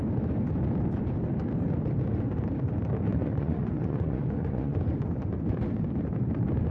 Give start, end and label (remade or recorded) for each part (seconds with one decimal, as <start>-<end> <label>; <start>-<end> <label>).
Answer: 0.0-3.1 recorded; 3.1-4.8 remade; 4.8-6.7 recorded